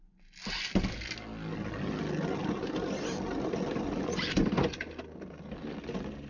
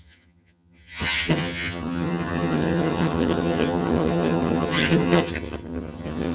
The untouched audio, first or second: first